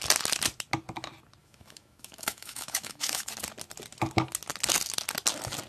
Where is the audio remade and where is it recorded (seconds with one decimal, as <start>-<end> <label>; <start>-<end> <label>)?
0.0-1.4 recorded; 1.4-3.3 remade; 3.3-5.7 recorded